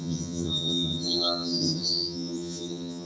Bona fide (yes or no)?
no